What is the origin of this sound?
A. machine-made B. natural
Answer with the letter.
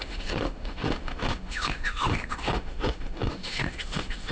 A